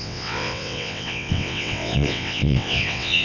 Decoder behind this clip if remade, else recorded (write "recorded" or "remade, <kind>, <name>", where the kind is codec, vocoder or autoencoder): remade, vocoder, WaveNeXt